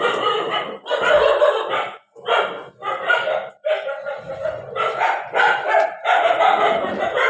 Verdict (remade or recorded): recorded